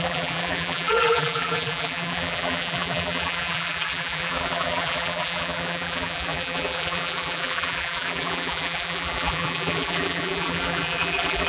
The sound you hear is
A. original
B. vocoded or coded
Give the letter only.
B